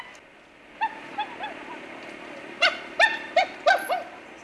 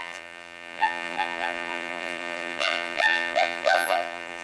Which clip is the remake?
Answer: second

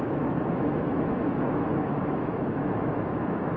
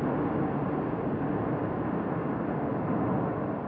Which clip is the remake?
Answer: first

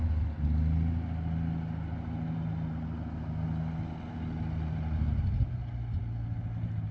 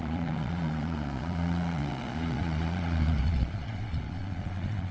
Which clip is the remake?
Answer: second